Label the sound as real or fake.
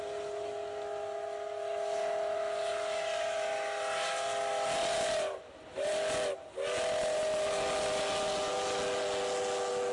real